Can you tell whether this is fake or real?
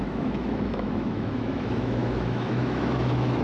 fake